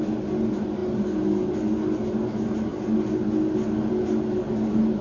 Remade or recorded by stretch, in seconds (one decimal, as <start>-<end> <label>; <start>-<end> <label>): 0.0-5.0 recorded